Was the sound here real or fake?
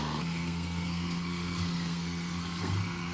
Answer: fake